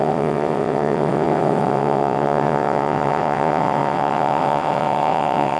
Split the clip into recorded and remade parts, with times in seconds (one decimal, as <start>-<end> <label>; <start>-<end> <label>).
0.0-5.6 remade